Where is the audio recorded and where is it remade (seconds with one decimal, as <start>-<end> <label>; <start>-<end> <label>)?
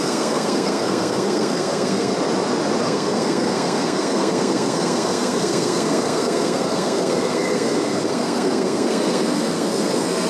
0.0-2.1 remade; 2.1-2.8 recorded; 2.8-10.3 remade